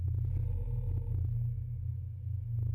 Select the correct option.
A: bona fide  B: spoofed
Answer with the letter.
A